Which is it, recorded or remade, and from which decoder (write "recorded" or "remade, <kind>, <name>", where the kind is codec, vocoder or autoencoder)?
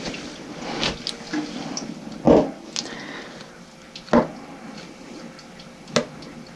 recorded